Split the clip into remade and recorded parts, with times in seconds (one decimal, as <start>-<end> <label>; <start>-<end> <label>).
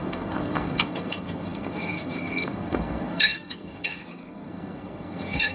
0.0-5.5 remade